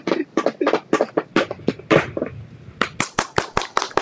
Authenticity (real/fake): real